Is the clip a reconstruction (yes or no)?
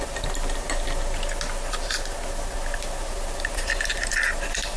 no